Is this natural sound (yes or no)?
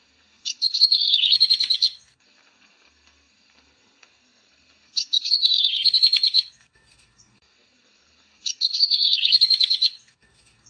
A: no